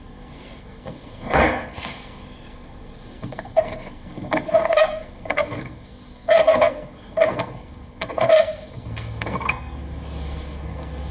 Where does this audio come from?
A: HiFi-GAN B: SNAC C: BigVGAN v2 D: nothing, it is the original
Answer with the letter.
B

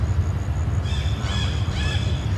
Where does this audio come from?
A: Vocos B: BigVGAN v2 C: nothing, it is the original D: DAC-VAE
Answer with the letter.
C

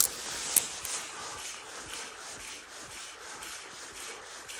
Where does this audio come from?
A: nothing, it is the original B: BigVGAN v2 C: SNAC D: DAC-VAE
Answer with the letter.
A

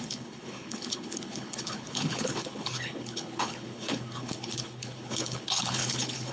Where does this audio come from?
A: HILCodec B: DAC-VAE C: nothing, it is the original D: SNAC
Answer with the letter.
A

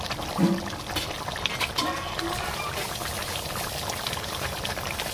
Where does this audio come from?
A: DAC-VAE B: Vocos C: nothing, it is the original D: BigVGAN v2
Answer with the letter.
C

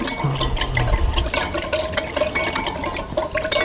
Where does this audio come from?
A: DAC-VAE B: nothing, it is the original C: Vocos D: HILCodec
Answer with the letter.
B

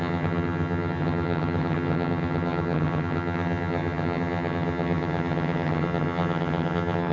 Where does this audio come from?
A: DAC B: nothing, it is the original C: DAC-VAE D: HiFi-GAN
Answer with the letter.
D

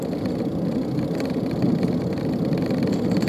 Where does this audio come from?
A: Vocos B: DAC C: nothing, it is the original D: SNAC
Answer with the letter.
C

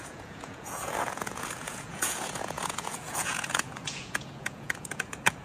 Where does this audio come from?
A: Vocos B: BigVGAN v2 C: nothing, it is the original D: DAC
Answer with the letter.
A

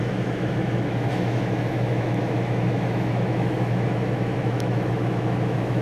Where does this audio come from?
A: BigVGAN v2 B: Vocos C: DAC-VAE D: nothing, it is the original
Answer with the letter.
C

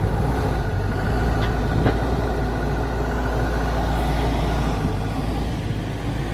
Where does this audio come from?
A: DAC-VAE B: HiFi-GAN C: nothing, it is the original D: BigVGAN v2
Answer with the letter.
C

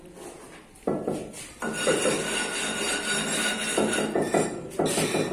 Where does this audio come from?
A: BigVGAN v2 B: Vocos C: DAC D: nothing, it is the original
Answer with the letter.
D